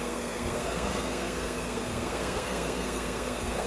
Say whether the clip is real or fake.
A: fake